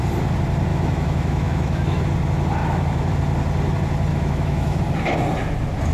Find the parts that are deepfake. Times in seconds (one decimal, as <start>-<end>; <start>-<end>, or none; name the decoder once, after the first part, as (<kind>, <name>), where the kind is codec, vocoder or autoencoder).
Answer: 0.7-2.0 (autoencoder, DAC-VAE); 2.6-3.1; 4.1-4.8